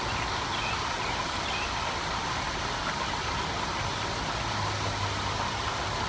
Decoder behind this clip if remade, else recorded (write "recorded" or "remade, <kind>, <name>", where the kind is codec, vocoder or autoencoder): recorded